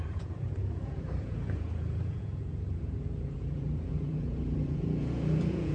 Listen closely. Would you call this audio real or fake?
fake